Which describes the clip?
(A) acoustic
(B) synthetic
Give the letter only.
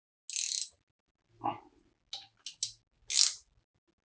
A